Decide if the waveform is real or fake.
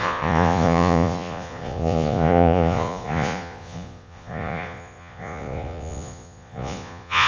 fake